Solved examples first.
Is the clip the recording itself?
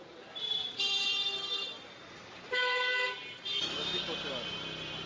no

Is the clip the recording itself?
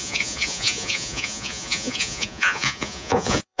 no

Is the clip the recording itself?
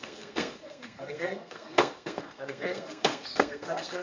no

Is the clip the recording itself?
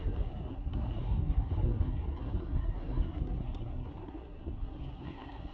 no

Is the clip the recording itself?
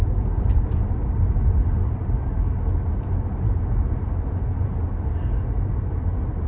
yes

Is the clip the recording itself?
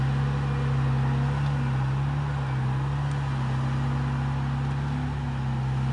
yes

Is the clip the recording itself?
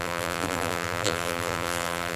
no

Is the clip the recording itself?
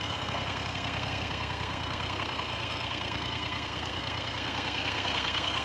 no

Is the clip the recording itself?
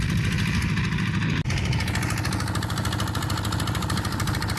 yes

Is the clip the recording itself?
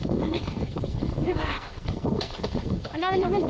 no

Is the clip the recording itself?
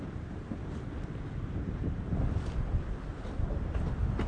yes